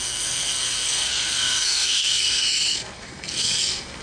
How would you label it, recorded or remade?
remade